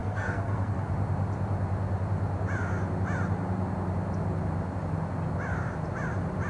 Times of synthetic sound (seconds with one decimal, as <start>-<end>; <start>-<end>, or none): 0.0-0.9